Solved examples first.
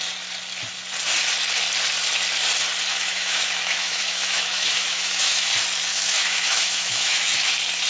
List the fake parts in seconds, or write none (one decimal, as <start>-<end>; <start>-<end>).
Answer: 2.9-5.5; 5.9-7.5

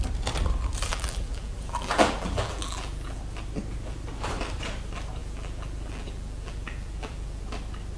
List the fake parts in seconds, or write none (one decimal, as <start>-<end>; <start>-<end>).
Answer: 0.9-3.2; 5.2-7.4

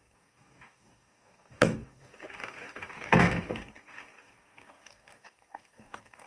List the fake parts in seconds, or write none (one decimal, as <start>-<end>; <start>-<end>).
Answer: 0.0-6.3

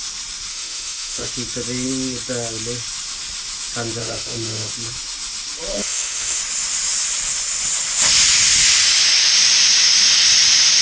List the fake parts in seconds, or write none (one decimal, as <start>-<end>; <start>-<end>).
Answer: 0.5-1.3; 4.0-4.7; 5.7-6.4

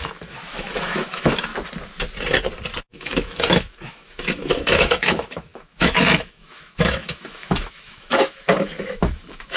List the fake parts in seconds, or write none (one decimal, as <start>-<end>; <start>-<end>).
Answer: 0.0-1.5; 2.9-9.6

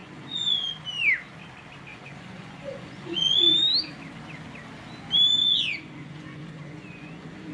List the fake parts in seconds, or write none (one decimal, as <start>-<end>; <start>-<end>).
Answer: 0.0-0.7; 1.9-3.5; 5.4-7.5

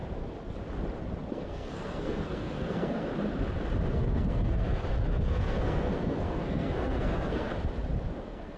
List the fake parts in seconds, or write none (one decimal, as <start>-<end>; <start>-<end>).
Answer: 1.3-3.1; 3.9-7.5; 8.2-8.6